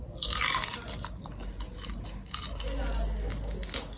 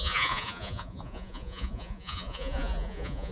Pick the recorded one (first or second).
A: first